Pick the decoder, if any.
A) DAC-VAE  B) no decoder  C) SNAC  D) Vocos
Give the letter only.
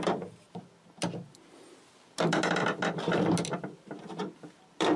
B